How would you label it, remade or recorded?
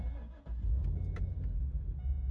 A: recorded